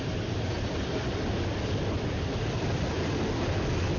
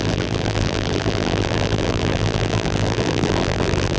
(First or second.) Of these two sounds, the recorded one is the first